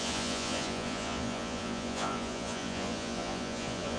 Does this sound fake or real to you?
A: fake